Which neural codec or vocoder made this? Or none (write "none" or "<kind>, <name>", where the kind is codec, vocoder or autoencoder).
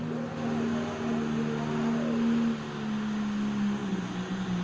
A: none